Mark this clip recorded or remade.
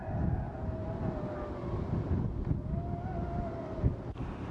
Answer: recorded